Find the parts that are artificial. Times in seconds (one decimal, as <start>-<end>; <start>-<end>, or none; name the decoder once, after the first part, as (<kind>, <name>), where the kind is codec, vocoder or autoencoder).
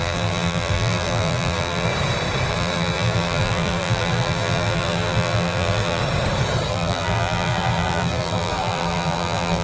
0.0-1.9 (vocoder, BigVGAN v2); 2.5-6.0; 6.7-9.6